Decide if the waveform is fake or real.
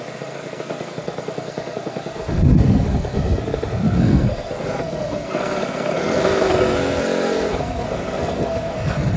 fake